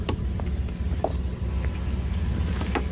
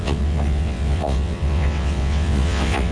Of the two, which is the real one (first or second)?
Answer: first